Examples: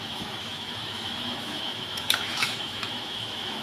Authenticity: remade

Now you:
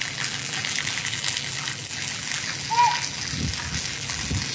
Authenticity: remade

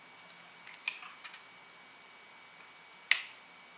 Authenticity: recorded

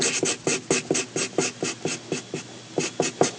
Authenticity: recorded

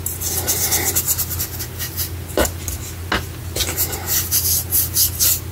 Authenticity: recorded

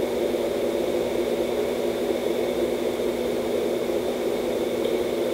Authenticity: recorded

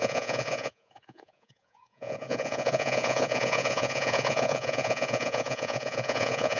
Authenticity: remade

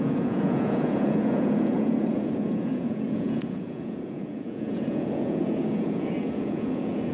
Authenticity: remade